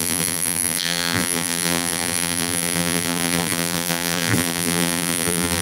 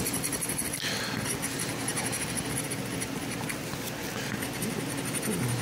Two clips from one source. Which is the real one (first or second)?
second